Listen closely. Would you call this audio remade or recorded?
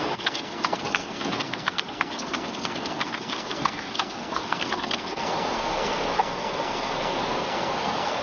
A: remade